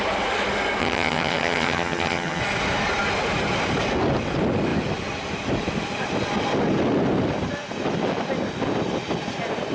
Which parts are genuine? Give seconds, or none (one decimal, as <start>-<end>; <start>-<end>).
0.0-0.8; 2.4-9.7